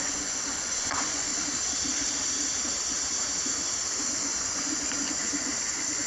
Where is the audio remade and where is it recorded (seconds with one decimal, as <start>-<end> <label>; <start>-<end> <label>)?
0.0-1.3 remade; 1.3-4.2 recorded; 4.2-6.1 remade